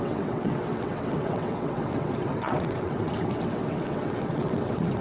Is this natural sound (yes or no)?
no